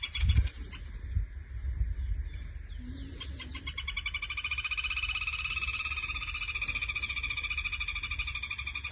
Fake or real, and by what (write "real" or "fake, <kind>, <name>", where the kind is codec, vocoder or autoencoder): real